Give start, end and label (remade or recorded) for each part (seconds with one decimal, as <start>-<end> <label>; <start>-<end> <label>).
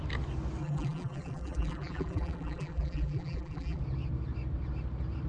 0.0-0.6 recorded; 0.6-3.8 remade; 3.8-5.3 recorded